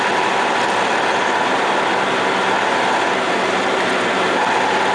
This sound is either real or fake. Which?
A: real